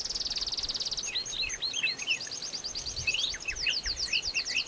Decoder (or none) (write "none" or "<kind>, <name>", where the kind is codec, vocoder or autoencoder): none